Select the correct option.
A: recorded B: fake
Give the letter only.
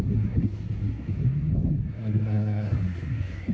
B